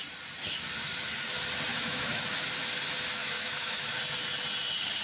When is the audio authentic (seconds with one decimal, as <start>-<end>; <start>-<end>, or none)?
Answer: 0.0-1.7; 2.2-3.2; 4.0-5.0